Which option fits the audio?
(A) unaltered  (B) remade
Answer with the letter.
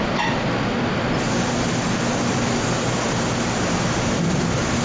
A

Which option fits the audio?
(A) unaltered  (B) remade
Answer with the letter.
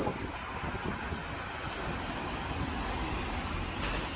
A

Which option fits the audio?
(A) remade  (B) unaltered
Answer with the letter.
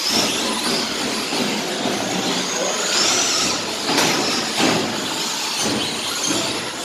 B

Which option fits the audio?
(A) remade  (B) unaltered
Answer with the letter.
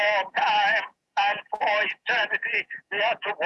A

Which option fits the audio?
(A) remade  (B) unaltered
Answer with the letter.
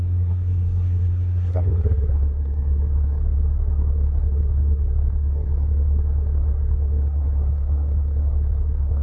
A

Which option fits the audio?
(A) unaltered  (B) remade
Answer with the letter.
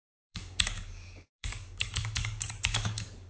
B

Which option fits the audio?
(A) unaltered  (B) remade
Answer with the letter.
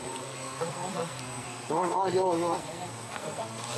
B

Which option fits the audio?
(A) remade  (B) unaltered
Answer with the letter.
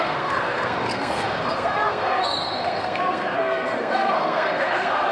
A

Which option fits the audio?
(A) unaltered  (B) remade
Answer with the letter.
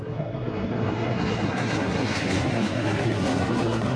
B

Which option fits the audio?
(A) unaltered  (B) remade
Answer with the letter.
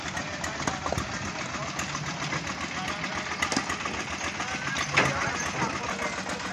A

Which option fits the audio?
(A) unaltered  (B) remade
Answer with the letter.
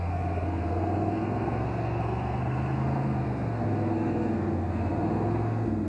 B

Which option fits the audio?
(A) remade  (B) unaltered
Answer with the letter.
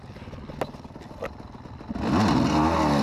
B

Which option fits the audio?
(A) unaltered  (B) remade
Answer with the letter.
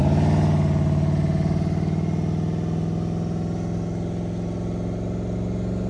A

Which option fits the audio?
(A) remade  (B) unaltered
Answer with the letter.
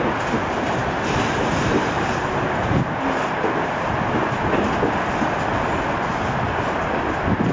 B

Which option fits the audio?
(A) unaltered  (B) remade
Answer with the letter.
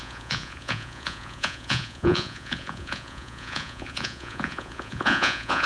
B